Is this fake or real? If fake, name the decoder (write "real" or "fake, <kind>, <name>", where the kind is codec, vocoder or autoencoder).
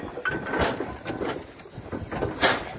real